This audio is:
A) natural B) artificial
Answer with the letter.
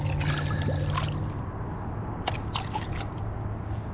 A